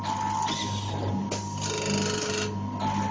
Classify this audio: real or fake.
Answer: real